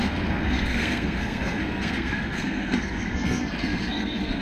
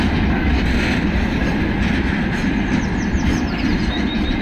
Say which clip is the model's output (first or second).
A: first